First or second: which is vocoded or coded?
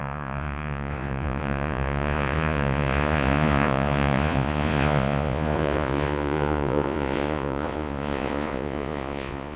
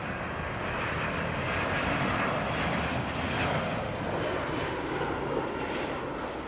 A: first